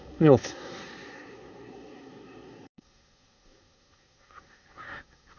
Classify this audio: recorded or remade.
remade